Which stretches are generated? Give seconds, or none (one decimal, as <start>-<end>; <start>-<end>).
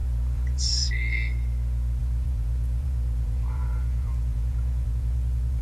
0.0-0.9; 2.0-5.6